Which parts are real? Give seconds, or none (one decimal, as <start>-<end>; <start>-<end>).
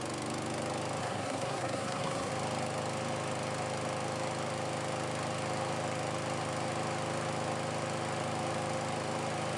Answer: 0.0-1.0; 2.3-9.6